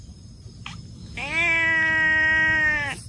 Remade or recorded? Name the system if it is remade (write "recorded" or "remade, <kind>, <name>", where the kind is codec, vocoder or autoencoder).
recorded